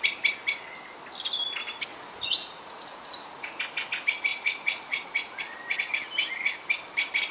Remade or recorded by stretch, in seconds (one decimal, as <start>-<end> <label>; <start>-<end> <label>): 0.0-1.9 recorded; 1.9-3.6 remade; 3.6-4.3 recorded; 4.3-5.4 remade; 5.4-7.3 recorded